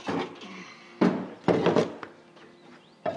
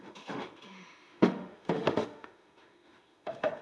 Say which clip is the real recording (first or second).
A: first